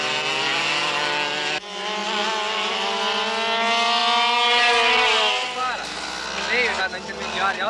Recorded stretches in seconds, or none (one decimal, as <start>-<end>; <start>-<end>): 0.0-7.7